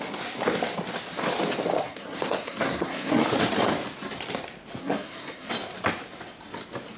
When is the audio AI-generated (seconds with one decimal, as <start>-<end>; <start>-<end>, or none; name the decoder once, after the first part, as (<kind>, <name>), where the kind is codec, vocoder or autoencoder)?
1.8-3.1 (codec, SNAC); 4.8-5.5